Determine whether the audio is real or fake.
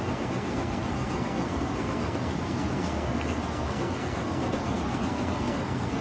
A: fake